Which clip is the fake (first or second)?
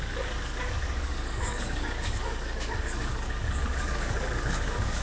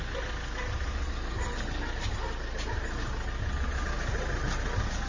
first